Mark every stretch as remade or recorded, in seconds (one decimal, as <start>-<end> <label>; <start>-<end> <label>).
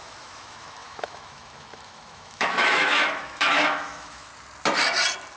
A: 0.0-4.3 remade; 4.3-5.4 recorded